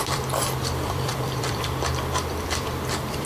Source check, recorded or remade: remade